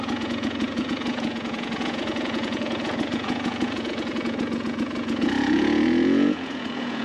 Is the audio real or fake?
fake